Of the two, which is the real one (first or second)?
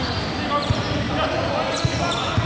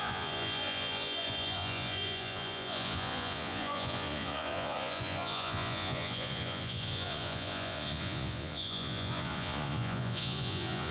first